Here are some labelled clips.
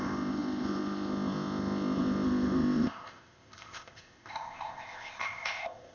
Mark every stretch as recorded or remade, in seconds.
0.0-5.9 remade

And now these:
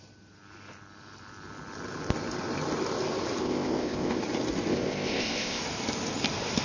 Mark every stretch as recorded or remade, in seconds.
0.0-3.4 recorded; 3.4-4.2 remade; 4.2-4.7 recorded; 4.7-5.6 remade; 5.6-6.6 recorded

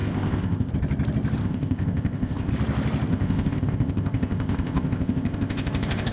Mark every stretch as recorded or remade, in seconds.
0.0-0.7 remade; 0.7-1.4 recorded; 1.4-2.5 remade; 2.5-3.1 recorded; 3.1-6.1 remade

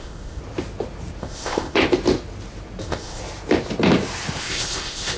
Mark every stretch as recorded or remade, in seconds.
0.0-0.4 remade; 0.4-1.2 recorded; 1.2-1.8 remade; 1.8-2.8 recorded; 2.8-3.2 remade; 3.2-4.4 recorded; 4.4-5.2 remade

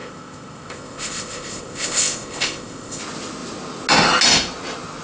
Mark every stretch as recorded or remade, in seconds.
0.0-3.0 remade; 3.0-5.0 recorded